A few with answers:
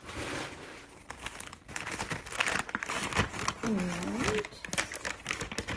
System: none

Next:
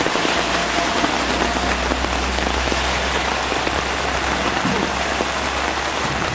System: vocoder, BigVGAN v2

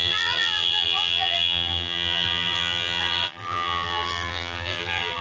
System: vocoder, BigVGAN v2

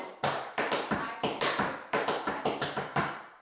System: vocoder, BigVGAN v2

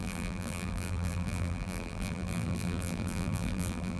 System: vocoder, BigVGAN v2